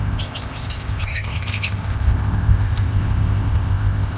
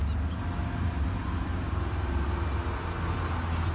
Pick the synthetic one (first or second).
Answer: first